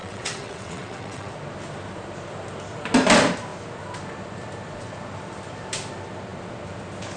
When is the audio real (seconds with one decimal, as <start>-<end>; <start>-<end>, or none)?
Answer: 1.3-7.2